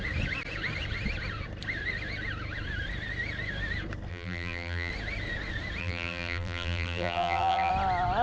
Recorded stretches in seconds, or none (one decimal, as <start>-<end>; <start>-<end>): 0.0-4.1; 4.9-5.8; 7.7-8.2